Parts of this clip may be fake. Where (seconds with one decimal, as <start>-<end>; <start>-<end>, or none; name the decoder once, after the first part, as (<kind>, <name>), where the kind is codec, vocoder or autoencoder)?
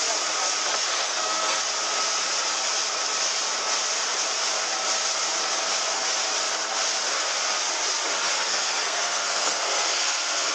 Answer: 0.9-1.6 (codec, SNAC); 8.3-10.5